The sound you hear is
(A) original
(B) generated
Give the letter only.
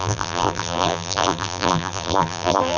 B